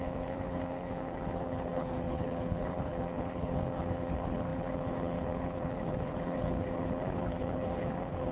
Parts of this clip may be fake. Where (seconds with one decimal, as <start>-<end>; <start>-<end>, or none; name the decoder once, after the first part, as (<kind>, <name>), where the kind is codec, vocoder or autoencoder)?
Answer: 0.0-8.3 (codec, HILCodec)